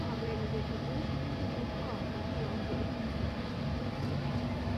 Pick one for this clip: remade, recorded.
recorded